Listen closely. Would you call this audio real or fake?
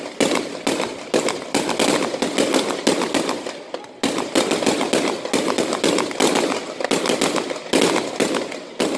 real